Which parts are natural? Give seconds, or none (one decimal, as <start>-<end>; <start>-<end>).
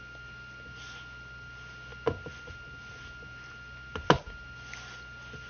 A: 0.0-5.5